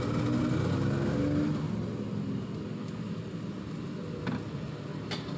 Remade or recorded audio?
recorded